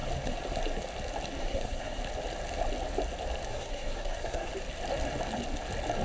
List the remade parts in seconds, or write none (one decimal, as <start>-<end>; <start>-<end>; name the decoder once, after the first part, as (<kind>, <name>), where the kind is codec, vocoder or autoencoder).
1.4-2.0 (codec, SNAC); 3.5-4.5